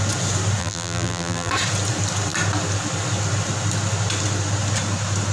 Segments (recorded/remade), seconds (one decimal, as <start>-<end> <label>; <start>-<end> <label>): 0.0-0.6 recorded; 0.6-1.5 remade; 1.5-5.3 recorded